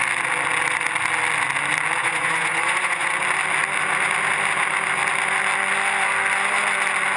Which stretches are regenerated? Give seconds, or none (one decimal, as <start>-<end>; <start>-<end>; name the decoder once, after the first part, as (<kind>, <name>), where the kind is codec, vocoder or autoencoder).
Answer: 2.0-3.1 (vocoder, Vocos)